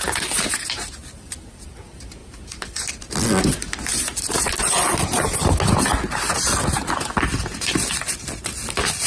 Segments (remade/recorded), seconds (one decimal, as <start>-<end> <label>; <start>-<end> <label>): 0.0-9.1 recorded